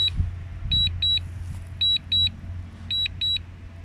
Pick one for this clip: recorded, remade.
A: recorded